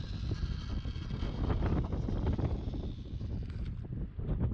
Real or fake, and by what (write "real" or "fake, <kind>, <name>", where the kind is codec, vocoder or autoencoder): real